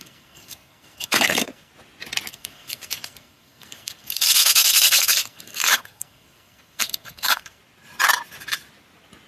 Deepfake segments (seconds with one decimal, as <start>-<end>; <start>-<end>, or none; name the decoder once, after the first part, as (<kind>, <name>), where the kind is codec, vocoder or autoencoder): 0.0-1.7 (codec, SNAC); 2.3-7.6